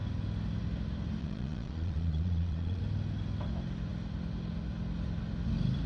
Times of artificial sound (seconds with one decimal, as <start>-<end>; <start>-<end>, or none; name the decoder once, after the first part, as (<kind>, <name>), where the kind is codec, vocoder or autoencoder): 1.2-2.8 (vocoder, Vocos)